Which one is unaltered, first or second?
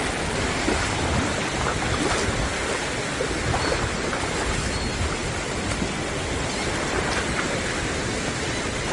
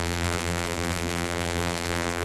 first